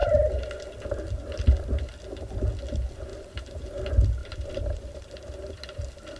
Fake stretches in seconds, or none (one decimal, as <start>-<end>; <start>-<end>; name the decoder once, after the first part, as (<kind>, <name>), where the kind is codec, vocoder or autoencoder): 3.1-3.8 (vocoder, BigVGAN v2); 4.2-4.8

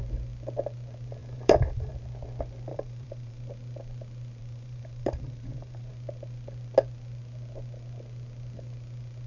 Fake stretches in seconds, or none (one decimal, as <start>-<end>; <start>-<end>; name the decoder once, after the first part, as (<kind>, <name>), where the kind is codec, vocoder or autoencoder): 1.2-1.9 (vocoder, BigVGAN v2); 2.7-3.4; 4.4-5.9